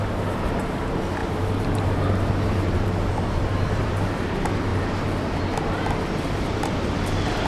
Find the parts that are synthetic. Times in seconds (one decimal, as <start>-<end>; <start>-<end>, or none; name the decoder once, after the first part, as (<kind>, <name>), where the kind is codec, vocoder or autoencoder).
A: 0.0-4.7 (vocoder, BigVGAN v2); 6.2-7.5